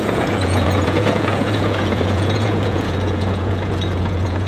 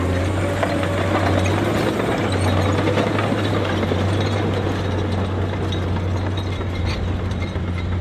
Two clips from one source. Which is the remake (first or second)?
first